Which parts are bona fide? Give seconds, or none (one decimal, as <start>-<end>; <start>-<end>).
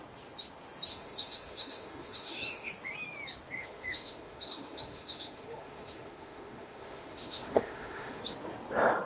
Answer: 0.0-0.9; 2.7-3.6; 8.2-9.1